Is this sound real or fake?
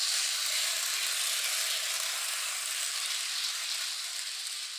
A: real